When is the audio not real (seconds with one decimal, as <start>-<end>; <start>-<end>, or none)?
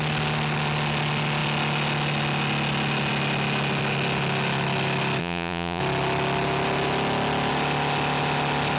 5.2-5.8